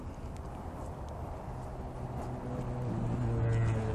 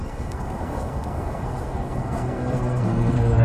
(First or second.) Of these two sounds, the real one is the first